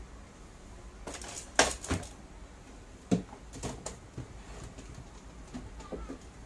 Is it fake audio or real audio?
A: real